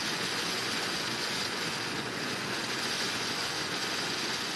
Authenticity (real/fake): fake